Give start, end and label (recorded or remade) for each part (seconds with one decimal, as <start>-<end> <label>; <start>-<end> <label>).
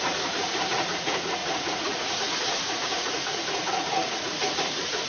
0.0-5.1 remade